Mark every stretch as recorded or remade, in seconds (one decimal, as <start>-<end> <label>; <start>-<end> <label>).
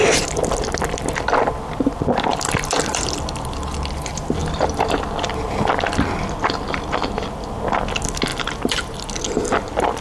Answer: 0.0-2.3 recorded; 2.3-3.2 remade; 3.2-4.4 recorded; 4.4-5.7 remade; 5.7-8.3 recorded; 8.3-9.1 remade; 9.1-10.0 recorded